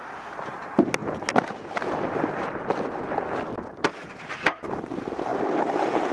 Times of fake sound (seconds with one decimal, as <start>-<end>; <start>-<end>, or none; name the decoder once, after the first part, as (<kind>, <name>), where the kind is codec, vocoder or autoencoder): none